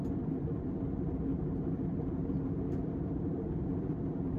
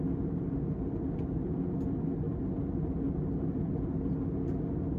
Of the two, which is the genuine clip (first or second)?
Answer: second